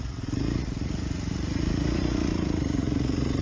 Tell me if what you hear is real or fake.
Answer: fake